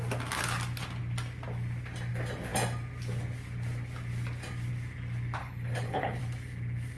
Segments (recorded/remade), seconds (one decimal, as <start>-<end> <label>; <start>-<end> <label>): 0.0-5.4 recorded; 5.4-6.2 remade; 6.2-7.0 recorded